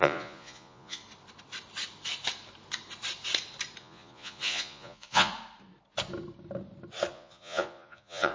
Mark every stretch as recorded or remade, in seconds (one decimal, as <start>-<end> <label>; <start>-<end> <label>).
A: 0.0-1.0 remade; 1.0-3.8 recorded; 3.8-5.3 remade; 5.3-7.1 recorded; 7.1-8.3 remade